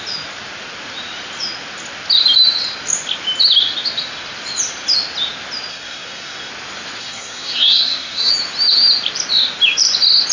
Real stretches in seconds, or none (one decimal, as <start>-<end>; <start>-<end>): 0.0-5.7; 6.5-7.0; 8.3-10.3